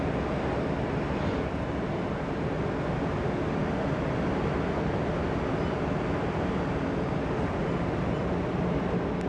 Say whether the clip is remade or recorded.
recorded